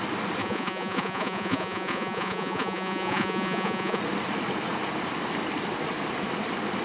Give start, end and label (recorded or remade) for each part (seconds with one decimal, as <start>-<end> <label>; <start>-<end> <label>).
0.0-0.4 recorded; 0.4-4.0 remade; 4.0-6.8 recorded